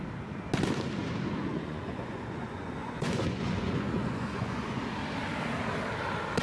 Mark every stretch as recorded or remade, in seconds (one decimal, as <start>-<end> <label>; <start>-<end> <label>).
0.0-1.3 recorded; 1.3-4.8 remade; 4.8-6.4 recorded